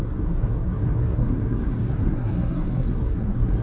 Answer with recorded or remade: remade